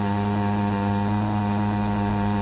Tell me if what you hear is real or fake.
real